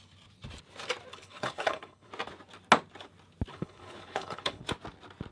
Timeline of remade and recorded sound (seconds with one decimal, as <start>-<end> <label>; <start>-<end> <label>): 0.0-1.1 recorded; 1.1-2.1 remade; 2.1-3.5 recorded; 3.5-4.6 remade; 4.6-5.3 recorded

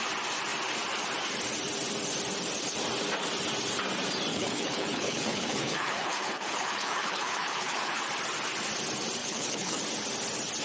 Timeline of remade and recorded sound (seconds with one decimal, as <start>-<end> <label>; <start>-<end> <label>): 0.0-4.3 recorded; 4.3-8.0 remade; 8.0-9.2 recorded; 9.2-9.8 remade; 9.8-10.6 recorded

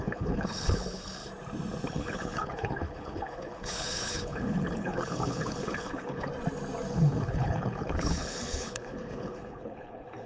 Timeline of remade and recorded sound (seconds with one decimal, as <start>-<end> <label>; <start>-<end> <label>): 0.0-1.2 remade; 1.2-1.9 recorded; 1.9-6.3 remade; 6.3-6.9 recorded; 6.9-10.3 remade

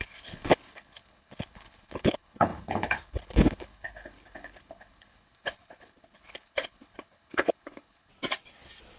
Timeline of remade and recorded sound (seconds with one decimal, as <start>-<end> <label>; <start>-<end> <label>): 0.0-8.1 remade; 8.1-9.0 recorded

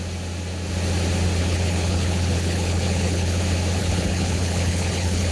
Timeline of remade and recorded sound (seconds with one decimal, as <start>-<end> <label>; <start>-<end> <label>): 0.0-1.4 recorded; 1.4-3.4 remade; 3.4-3.8 recorded; 3.8-5.3 remade

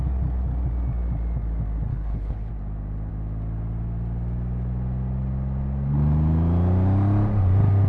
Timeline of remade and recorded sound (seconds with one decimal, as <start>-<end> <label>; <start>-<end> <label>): 0.0-1.9 recorded; 1.9-2.5 remade; 2.5-7.9 recorded